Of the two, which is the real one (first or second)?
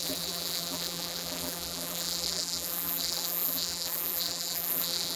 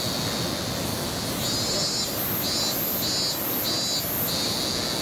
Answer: second